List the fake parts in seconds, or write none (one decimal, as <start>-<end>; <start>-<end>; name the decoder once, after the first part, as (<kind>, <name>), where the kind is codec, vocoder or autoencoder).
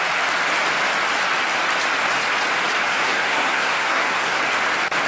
2.9-4.4 (codec, SNAC)